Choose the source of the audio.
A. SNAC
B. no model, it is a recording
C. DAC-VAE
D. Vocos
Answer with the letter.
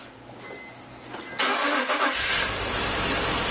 B